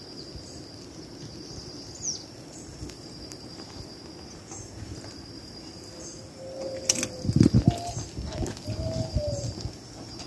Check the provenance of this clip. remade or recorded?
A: recorded